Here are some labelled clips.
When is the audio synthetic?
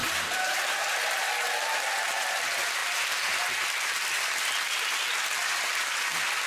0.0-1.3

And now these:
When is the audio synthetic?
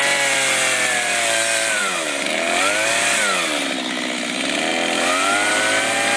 none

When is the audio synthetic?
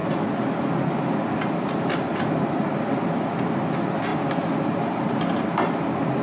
0.0-1.4; 2.1-3.3; 4.1-5.2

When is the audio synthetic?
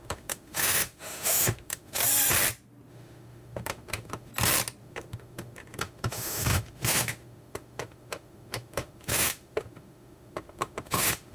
0.0-2.0; 2.9-4.3; 4.8-11.3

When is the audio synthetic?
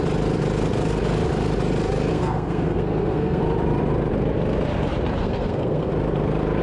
2.1-3.4; 5.2-5.9